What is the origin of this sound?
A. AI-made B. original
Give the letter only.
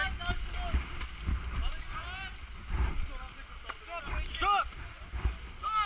B